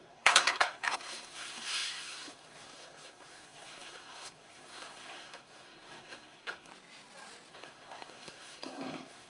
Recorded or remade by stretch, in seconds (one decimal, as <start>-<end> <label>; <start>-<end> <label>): 0.0-6.7 remade; 6.7-7.5 recorded; 7.5-9.3 remade